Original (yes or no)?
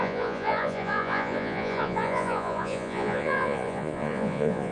no